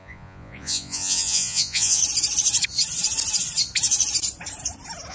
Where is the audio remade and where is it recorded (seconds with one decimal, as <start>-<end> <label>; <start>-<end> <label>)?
0.0-2.0 remade; 2.0-5.1 recorded

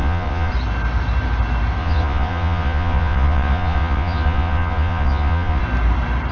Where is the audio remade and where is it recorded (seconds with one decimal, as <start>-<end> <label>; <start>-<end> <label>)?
0.0-0.5 remade; 0.5-1.8 recorded; 1.8-5.6 remade; 5.6-6.3 recorded

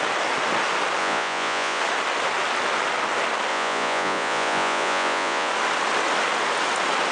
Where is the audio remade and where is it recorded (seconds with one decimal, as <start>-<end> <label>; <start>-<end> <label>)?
0.0-1.0 recorded; 1.0-1.8 remade; 1.8-3.5 recorded; 3.5-5.5 remade; 5.5-7.1 recorded

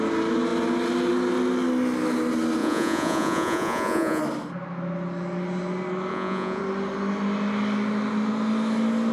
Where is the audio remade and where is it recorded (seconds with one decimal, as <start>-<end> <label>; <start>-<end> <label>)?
0.0-2.6 recorded; 2.6-4.2 remade; 4.2-6.1 recorded; 6.1-6.6 remade; 6.6-9.1 recorded

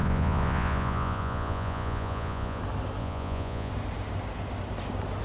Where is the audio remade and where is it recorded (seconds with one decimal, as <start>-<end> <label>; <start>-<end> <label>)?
0.0-2.6 remade; 2.6-3.0 recorded; 3.0-3.7 remade; 3.7-5.2 recorded

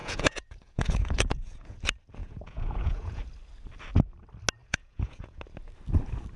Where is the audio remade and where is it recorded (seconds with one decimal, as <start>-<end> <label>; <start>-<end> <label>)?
0.0-1.8 remade; 1.8-2.2 recorded; 2.2-3.2 remade; 3.2-4.6 recorded; 4.6-5.4 remade; 5.4-6.4 recorded

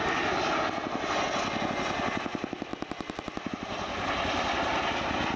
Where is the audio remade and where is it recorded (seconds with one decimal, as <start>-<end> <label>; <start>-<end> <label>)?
0.0-5.4 recorded